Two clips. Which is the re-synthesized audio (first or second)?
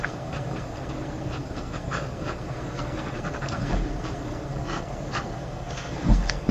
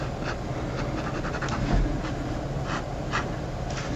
first